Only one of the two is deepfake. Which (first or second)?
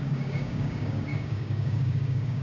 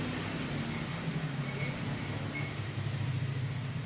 first